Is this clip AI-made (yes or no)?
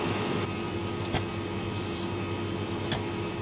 no